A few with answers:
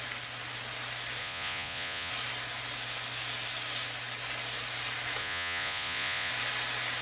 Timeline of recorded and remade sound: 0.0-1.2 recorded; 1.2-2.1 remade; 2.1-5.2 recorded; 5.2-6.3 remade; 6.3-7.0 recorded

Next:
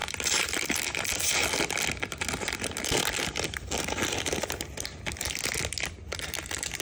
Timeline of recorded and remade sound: 0.0-0.8 remade; 0.8-6.8 recorded

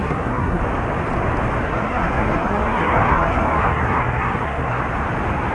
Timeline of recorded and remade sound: 0.0-0.6 remade; 0.6-1.6 recorded; 1.6-4.8 remade; 4.8-5.5 recorded

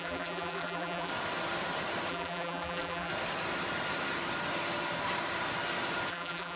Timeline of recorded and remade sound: 0.0-1.1 remade; 1.1-2.1 recorded; 2.1-3.1 remade; 3.1-6.1 recorded; 6.1-6.6 remade

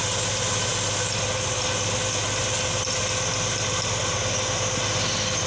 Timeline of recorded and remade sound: 0.0-5.5 recorded

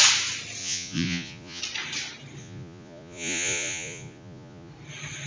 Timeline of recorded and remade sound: 0.0-0.6 recorded; 0.6-1.6 remade; 1.6-2.4 recorded; 2.4-4.7 remade; 4.7-5.3 recorded

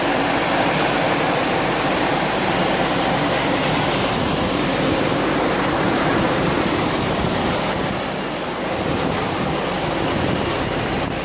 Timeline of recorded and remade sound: 0.0-1.4 recorded; 1.4-3.3 remade; 3.3-4.7 recorded; 4.7-7.8 remade; 7.8-11.2 recorded

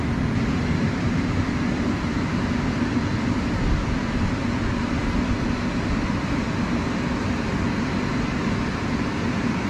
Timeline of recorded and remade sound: 0.0-0.6 recorded; 0.6-1.5 remade; 1.5-9.7 recorded